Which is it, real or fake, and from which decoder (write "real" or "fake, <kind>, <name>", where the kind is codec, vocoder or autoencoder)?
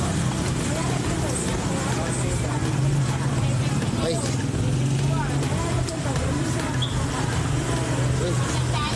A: real